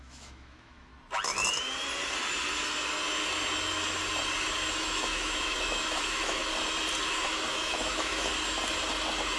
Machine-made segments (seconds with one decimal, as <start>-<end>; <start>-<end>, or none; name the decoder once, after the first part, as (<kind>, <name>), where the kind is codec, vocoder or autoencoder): 0.0-0.9 (autoencoder, DAC-VAE); 4.7-6.4; 7.5-8.3